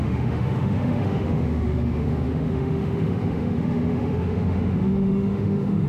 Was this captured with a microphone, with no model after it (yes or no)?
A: no